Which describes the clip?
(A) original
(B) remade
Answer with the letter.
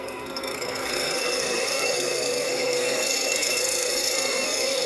B